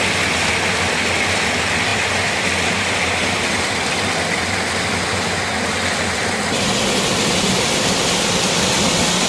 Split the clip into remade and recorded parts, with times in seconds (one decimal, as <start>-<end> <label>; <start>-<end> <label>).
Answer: 0.0-9.3 recorded